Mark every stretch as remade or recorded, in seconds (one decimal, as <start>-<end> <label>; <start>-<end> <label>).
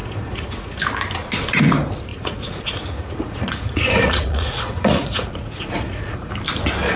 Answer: 0.0-0.8 remade; 0.8-2.1 recorded; 2.1-6.3 remade; 6.3-7.0 recorded